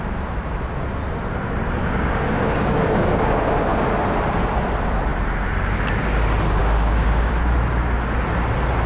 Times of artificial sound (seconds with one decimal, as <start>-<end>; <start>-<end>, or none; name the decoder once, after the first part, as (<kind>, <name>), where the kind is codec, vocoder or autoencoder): 1.8-3.9 (codec, DAC); 6.6-7.3